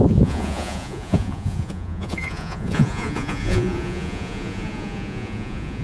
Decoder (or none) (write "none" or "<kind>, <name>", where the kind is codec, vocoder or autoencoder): vocoder, Vocos